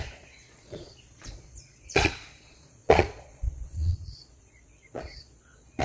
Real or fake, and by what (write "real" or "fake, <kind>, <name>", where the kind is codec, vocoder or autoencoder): fake, vocoder, Vocos